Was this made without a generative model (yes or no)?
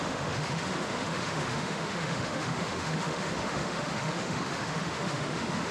no